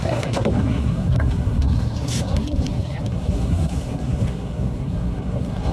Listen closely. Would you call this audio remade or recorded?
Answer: remade